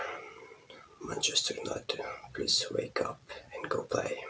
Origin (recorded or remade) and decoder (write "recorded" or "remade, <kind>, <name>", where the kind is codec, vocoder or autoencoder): recorded